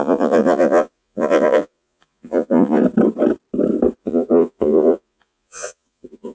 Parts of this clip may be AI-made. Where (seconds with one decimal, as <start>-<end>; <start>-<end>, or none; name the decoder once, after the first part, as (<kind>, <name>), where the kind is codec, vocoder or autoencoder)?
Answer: 0.0-2.8 (vocoder, Vocos); 4.0-6.3